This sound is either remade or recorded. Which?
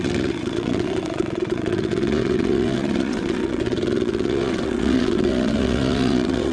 remade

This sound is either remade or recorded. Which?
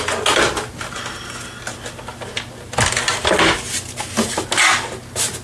recorded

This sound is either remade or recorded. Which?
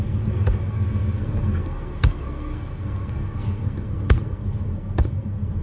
remade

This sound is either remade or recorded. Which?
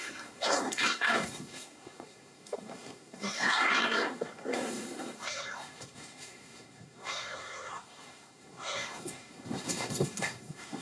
remade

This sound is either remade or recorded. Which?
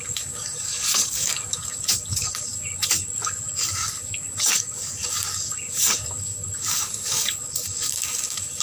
remade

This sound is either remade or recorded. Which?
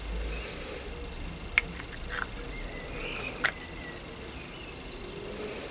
recorded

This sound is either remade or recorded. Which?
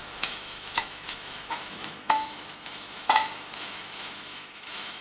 remade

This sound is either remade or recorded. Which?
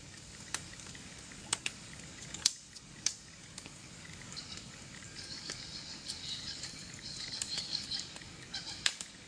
remade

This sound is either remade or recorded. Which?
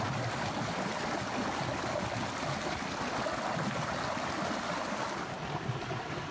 recorded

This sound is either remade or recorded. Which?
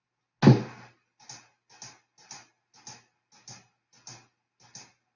recorded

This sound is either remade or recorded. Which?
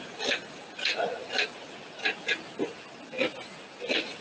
recorded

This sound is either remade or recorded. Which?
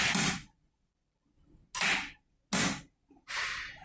recorded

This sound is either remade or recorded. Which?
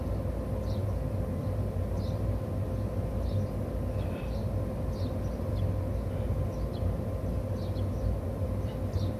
recorded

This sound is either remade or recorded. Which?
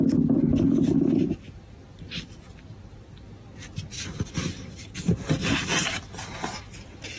recorded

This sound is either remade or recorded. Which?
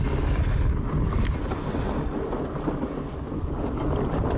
recorded